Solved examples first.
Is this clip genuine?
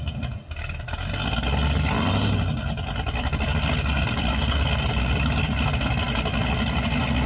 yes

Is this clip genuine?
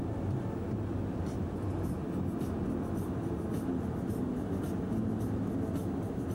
yes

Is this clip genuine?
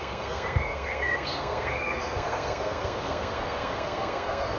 no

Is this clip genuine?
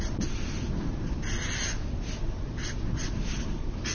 yes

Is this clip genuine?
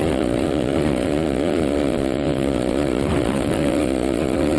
no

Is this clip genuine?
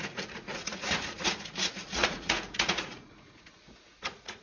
no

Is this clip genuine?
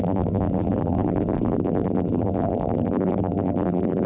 no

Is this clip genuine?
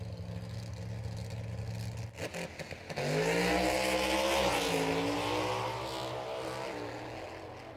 yes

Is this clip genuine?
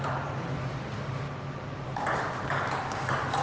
yes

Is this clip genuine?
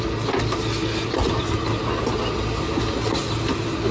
yes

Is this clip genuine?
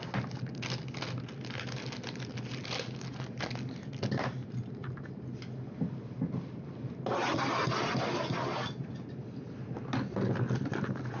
yes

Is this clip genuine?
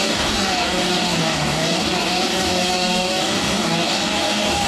no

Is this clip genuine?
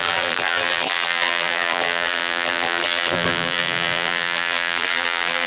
no